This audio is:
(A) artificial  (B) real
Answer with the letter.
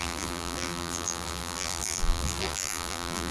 A